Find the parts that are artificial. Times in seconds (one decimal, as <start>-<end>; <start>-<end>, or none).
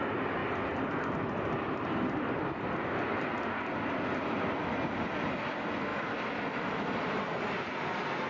none